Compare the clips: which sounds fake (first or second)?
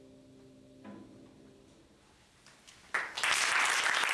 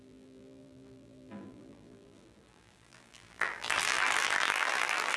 second